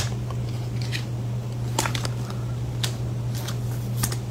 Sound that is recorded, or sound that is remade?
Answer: recorded